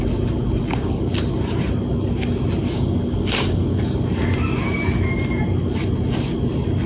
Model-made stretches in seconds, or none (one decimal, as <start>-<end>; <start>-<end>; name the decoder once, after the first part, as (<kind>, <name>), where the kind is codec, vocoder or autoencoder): 0.6-1.1 (codec, DAC); 2.6-3.8

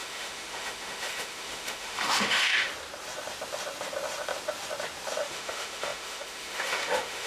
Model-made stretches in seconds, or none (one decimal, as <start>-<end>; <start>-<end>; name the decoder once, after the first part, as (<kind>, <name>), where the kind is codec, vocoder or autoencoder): 0.0-2.7 (autoencoder, DAC-VAE); 5.2-7.3

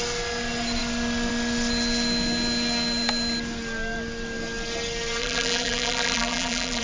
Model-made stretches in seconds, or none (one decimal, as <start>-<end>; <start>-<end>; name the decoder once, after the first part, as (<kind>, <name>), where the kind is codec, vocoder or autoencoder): 5.2-6.8 (vocoder, BigVGAN v2)